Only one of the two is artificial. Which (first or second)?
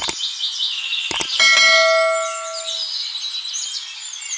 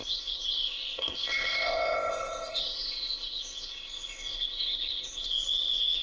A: second